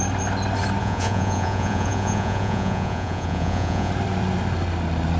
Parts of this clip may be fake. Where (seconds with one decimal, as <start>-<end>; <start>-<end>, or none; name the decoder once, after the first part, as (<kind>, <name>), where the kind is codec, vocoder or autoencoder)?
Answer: 0.8-3.9 (vocoder, Vocos)